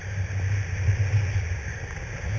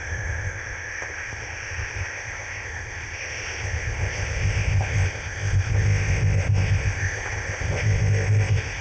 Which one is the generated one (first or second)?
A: second